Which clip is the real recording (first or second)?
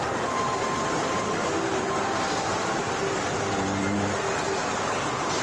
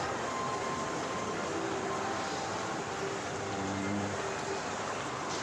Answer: second